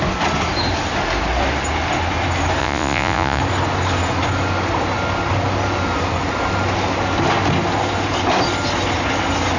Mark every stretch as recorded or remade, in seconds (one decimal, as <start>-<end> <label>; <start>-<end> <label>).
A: 0.0-2.6 recorded; 2.6-3.4 remade; 3.4-9.6 recorded

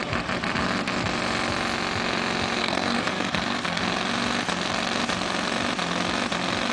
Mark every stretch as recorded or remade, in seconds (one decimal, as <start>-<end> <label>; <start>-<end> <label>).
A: 0.0-2.6 recorded; 2.6-3.8 remade; 3.8-6.7 recorded

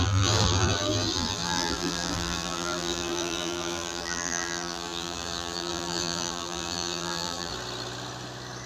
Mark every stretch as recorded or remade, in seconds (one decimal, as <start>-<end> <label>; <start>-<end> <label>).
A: 0.0-7.5 remade; 7.5-8.7 recorded

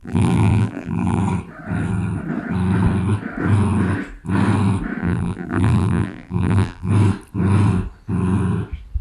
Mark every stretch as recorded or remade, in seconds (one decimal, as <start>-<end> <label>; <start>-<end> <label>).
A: 0.0-1.2 remade; 1.2-5.0 recorded; 5.0-6.9 remade; 6.9-9.0 recorded

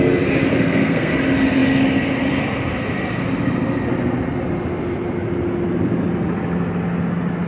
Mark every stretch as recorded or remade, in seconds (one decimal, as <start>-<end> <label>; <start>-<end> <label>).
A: 0.0-0.5 recorded; 0.5-1.1 remade; 1.1-7.5 recorded